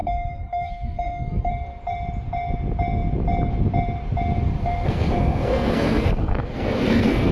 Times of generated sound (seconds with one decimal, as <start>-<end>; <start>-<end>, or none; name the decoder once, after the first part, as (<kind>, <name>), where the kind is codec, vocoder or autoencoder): 0.0-1.5 (codec, SNAC); 4.6-7.3